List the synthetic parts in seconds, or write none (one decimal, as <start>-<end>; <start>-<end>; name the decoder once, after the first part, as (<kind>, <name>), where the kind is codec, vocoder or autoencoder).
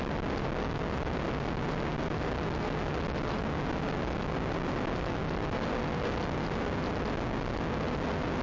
none